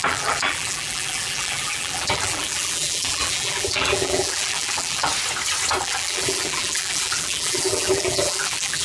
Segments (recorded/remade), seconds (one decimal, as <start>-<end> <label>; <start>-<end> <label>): 0.0-5.1 remade; 5.1-5.8 recorded; 5.8-8.8 remade